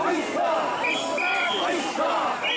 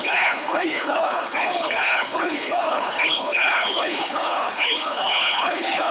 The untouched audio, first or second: first